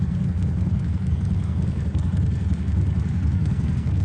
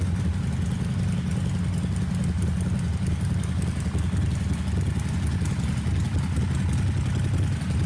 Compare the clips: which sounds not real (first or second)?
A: first